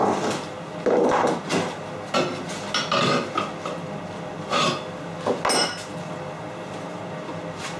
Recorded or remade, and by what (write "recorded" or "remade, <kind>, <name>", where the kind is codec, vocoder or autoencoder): recorded